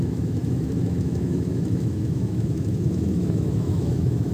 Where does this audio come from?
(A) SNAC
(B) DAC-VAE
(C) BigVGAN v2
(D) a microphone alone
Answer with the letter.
B